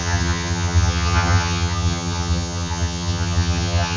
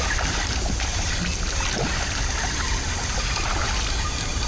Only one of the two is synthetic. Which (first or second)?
first